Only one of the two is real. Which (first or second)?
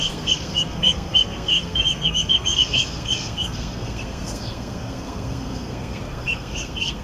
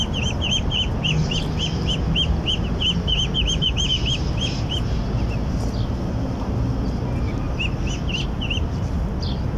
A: second